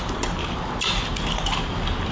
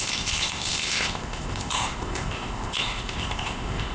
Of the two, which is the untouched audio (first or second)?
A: first